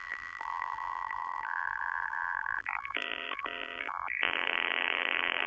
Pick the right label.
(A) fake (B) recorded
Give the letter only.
A